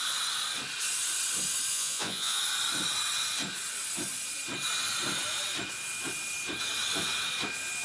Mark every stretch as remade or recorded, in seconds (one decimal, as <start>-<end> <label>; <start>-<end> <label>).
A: 0.0-1.7 recorded; 1.7-2.4 remade; 2.4-7.8 recorded